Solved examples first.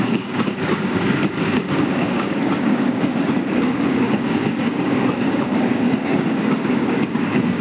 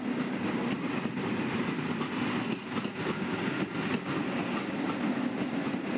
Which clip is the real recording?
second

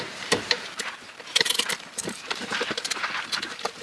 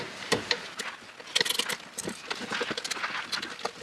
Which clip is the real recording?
second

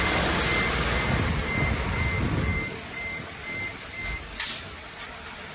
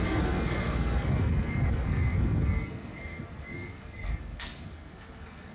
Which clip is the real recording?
first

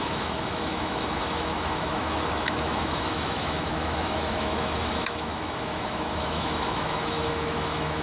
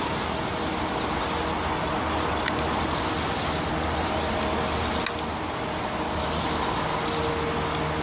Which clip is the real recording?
second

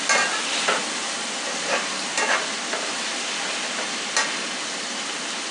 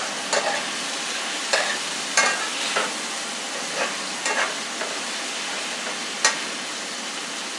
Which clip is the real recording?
second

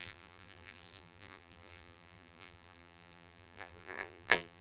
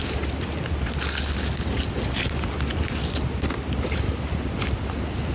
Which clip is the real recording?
second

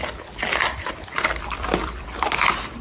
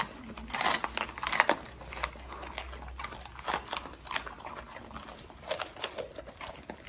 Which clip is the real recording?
second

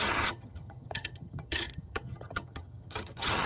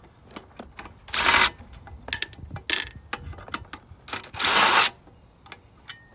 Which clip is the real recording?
second